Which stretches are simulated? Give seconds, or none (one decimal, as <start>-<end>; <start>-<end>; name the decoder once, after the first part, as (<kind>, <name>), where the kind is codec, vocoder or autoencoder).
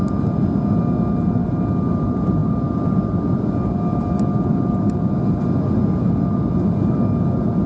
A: none